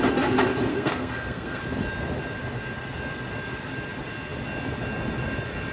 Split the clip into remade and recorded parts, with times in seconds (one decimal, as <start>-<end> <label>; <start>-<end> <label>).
0.0-0.7 recorded; 0.7-1.6 remade; 1.6-5.7 recorded